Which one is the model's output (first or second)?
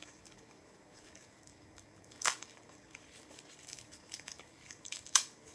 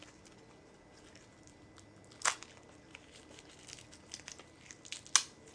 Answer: first